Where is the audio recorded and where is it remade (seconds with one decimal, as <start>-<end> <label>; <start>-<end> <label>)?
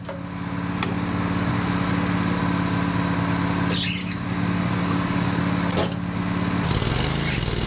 0.0-4.0 recorded; 4.0-5.4 remade; 5.4-7.7 recorded